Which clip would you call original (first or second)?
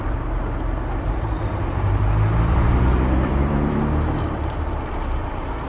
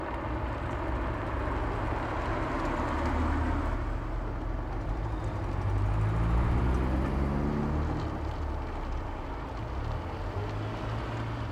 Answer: second